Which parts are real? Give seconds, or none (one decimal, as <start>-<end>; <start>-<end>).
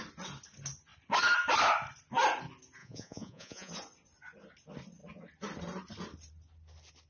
0.0-2.8; 3.7-7.1